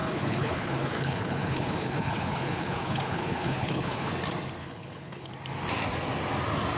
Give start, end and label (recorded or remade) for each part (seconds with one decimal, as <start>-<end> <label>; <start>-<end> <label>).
0.0-4.1 remade; 4.1-4.6 recorded; 4.6-5.3 remade; 5.3-6.8 recorded